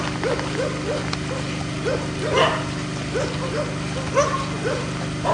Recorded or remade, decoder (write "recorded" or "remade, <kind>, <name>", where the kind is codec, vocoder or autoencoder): recorded